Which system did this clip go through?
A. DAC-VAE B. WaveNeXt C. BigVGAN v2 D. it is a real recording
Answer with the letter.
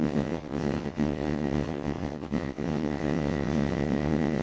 B